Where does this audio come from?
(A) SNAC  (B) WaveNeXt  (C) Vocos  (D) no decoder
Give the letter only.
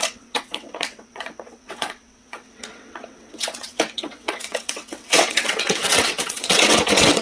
B